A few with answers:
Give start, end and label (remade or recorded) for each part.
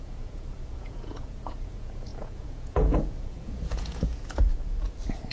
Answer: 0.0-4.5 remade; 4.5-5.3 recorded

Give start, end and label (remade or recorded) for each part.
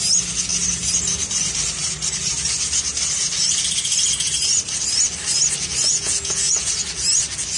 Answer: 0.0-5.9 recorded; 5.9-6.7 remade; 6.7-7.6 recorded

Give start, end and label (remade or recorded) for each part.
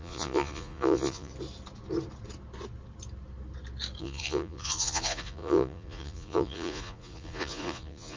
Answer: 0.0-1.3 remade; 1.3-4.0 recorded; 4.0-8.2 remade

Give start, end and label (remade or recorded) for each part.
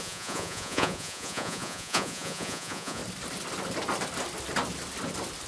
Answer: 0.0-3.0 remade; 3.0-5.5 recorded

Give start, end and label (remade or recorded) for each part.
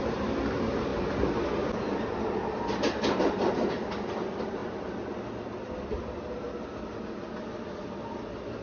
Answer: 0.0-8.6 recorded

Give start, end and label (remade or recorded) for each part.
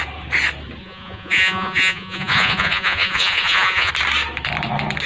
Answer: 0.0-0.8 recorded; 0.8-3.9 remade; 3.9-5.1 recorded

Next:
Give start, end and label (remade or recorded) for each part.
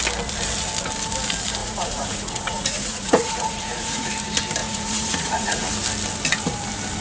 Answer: 0.0-1.6 recorded; 1.6-4.1 remade; 4.1-4.6 recorded; 4.6-5.7 remade; 5.7-7.0 recorded